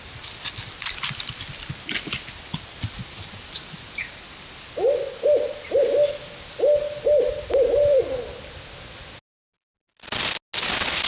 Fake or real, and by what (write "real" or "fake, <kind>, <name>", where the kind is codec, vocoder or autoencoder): real